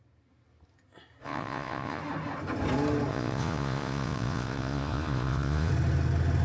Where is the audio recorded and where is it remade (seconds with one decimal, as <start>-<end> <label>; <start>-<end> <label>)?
0.0-1.2 recorded; 1.2-2.0 remade; 2.0-3.1 recorded; 3.1-5.7 remade; 5.7-6.4 recorded